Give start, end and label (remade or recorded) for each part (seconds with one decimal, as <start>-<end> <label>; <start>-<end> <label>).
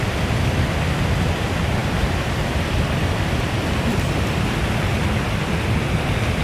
0.0-6.4 remade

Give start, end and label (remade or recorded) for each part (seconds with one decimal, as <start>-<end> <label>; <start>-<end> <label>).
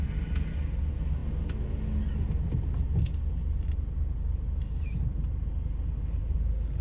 0.0-6.8 recorded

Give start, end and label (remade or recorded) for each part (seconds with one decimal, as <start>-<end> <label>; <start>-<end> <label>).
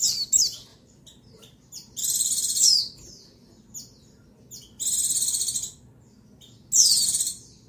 0.0-0.7 recorded; 0.7-2.8 remade; 2.8-7.7 recorded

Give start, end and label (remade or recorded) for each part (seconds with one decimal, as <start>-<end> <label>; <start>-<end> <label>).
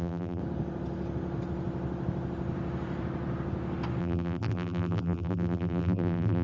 0.0-0.4 remade; 0.4-4.0 recorded; 4.0-6.4 remade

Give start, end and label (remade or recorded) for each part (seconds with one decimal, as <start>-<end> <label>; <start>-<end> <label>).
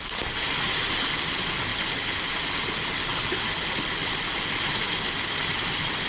0.0-3.1 recorded; 3.1-4.6 remade; 4.6-6.1 recorded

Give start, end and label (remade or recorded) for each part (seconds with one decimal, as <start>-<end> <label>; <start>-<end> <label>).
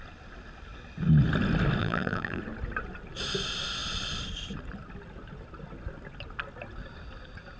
0.0-1.8 recorded; 1.8-2.4 remade; 2.4-7.6 recorded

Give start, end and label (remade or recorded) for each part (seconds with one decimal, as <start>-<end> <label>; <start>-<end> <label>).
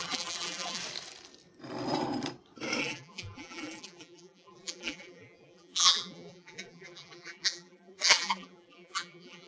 0.0-0.8 remade; 0.8-2.8 recorded; 2.8-9.5 remade